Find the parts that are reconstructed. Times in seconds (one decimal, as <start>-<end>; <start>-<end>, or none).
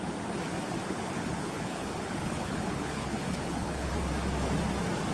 0.8-3.9